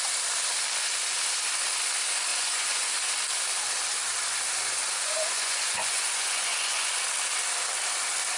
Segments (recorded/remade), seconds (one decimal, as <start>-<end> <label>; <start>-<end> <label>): 0.0-2.3 recorded; 2.3-2.9 remade; 2.9-4.6 recorded; 4.6-6.9 remade; 6.9-8.4 recorded